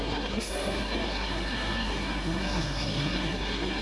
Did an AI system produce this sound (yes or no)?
yes